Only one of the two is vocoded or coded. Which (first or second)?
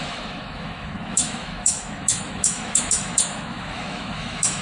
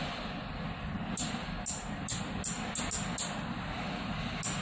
first